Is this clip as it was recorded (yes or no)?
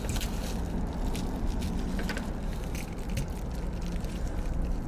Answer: yes